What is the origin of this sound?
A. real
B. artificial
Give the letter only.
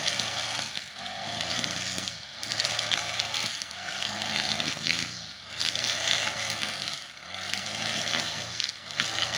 B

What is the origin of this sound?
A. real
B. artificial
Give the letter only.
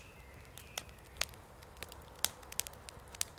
A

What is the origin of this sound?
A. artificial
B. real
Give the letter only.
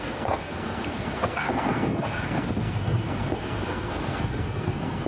A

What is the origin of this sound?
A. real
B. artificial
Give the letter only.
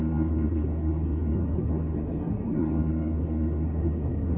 B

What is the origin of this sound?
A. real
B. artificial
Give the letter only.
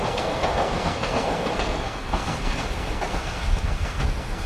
B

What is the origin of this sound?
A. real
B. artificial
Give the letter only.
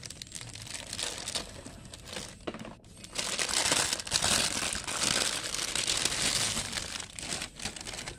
A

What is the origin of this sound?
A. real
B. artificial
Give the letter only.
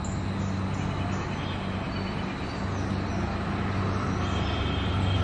A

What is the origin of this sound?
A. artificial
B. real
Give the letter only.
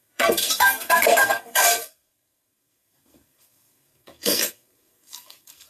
A